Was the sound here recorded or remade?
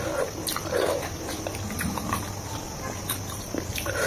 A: recorded